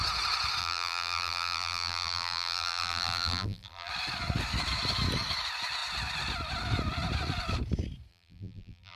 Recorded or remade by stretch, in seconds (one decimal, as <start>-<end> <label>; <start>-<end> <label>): 0.0-0.6 recorded; 0.6-3.9 remade; 3.9-8.1 recorded; 8.1-9.0 remade